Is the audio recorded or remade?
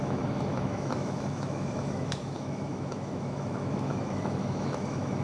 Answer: remade